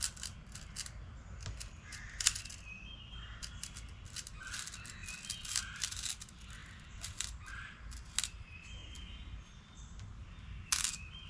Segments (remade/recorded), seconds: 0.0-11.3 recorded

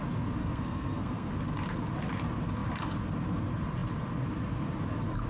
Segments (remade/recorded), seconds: 0.0-0.4 recorded; 0.4-1.3 remade; 1.3-5.3 recorded

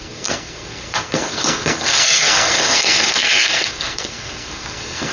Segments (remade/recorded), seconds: 0.0-5.1 remade

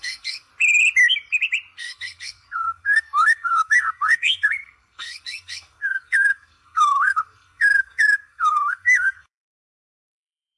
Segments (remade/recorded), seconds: 0.0-0.5 remade; 0.5-1.8 recorded; 1.8-10.6 remade

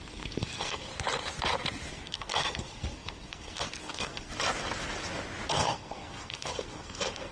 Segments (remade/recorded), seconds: 0.0-0.9 remade; 0.9-1.9 recorded; 1.9-4.3 remade; 4.3-5.5 recorded; 5.5-7.3 remade

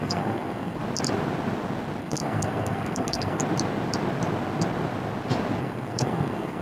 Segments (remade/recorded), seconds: 0.0-0.8 remade; 0.8-2.0 recorded; 2.0-3.4 remade; 3.4-5.6 recorded; 5.6-6.6 remade

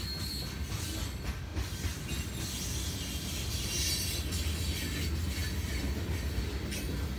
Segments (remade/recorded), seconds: 0.0-7.2 recorded

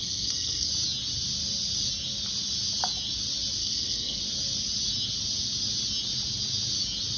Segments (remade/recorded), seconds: 0.0-0.7 remade; 0.7-3.6 recorded; 3.6-4.2 remade; 4.2-7.2 recorded